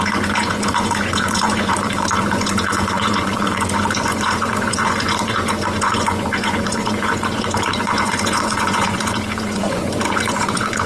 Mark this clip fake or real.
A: fake